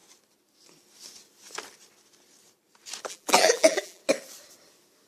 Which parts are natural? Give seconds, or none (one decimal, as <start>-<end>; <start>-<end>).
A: 0.0-3.1; 4.0-5.1